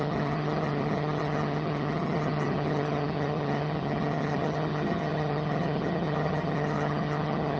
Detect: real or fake fake